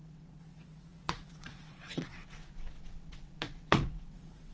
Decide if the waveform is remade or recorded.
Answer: remade